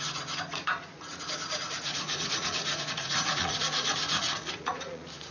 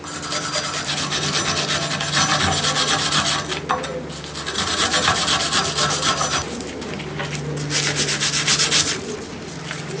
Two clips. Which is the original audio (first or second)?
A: second